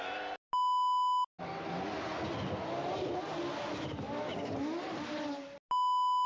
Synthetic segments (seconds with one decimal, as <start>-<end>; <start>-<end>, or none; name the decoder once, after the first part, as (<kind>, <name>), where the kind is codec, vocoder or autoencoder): none